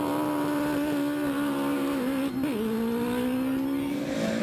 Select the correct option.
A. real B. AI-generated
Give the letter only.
A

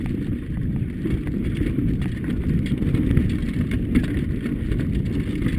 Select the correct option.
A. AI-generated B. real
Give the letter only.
B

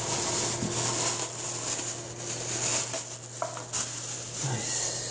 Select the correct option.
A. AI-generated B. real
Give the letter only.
B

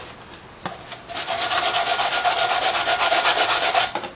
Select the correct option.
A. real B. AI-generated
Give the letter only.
A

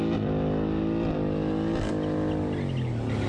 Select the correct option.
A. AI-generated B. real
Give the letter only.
B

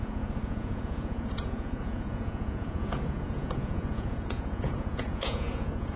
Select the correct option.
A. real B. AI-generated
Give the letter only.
B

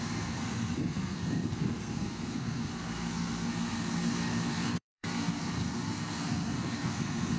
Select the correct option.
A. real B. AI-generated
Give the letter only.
B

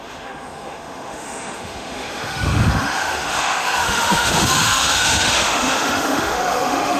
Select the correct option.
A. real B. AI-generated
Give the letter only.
B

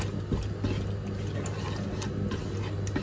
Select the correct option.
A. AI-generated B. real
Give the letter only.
B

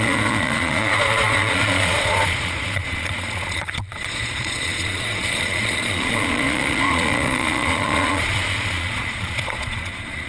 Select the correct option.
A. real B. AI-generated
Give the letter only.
B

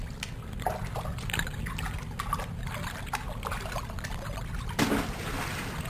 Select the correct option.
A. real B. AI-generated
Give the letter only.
A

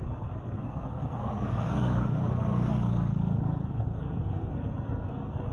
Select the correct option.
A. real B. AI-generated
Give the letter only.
B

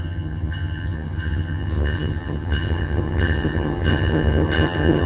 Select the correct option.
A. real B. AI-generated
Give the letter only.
B